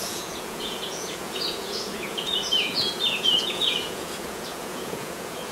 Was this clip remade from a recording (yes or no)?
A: yes